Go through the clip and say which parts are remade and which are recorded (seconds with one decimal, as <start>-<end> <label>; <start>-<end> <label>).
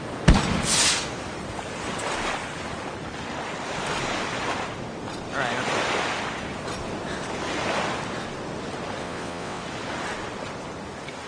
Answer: 0.0-9.0 recorded; 9.0-9.6 remade; 9.6-11.3 recorded